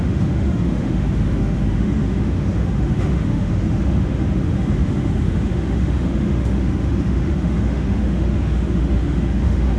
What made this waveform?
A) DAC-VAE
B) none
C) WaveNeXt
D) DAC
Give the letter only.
A